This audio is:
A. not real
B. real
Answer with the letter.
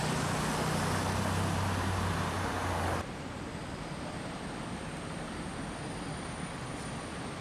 B